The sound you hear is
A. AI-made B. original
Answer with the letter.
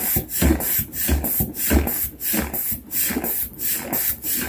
B